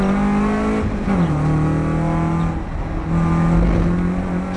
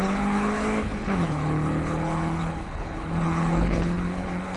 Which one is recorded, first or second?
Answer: first